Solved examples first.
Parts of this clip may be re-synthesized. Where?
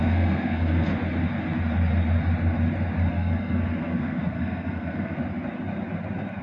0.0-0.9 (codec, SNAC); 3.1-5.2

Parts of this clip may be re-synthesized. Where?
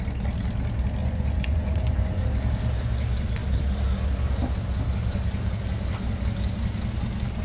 1.0-2.2 (vocoder, Vocos)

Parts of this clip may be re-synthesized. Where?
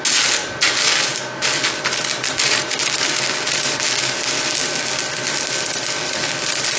none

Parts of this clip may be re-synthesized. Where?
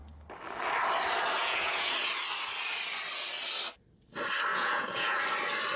1.4-1.9 (vocoder, Vocos); 4.5-5.2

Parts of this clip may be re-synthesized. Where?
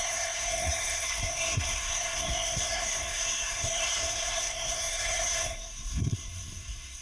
0.0-7.0 (codec, SNAC)